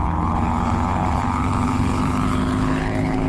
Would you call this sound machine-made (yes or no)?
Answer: yes